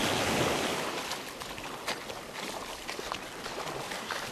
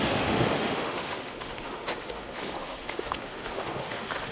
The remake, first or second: second